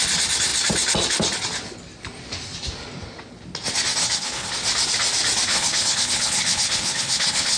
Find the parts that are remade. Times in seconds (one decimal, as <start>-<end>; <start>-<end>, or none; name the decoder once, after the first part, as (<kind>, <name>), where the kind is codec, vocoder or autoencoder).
4.0-4.5 (codec, HILCodec); 5.5-7.6